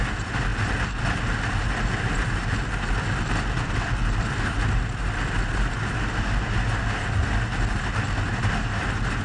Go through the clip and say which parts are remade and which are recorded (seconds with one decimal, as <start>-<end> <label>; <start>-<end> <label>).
0.0-9.2 recorded

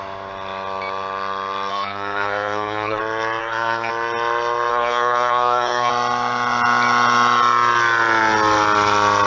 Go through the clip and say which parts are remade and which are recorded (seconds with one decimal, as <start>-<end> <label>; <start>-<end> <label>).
0.0-1.7 recorded; 1.7-3.0 remade; 3.0-3.4 recorded; 3.4-3.9 remade; 3.9-4.7 recorded; 4.7-5.9 remade; 5.9-9.3 recorded

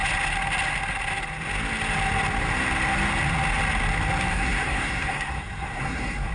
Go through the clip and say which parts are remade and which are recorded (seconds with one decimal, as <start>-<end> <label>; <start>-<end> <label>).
0.0-4.3 recorded; 4.3-6.3 remade

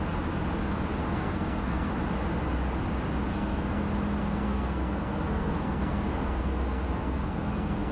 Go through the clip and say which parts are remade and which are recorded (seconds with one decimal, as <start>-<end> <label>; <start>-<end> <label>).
0.0-1.0 recorded; 1.0-1.9 remade; 1.9-3.3 recorded; 3.3-3.8 remade; 3.8-4.2 recorded; 4.2-7.9 remade

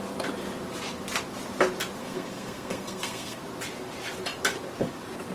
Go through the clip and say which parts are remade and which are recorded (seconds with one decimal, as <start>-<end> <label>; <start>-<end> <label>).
0.0-2.0 recorded; 2.0-3.4 remade; 3.4-5.3 recorded

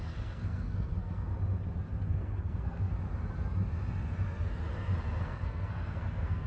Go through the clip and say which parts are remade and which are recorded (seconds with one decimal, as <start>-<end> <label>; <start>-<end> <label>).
0.0-1.3 remade; 1.3-2.1 recorded; 2.1-2.9 remade; 2.9-5.2 recorded; 5.2-6.5 remade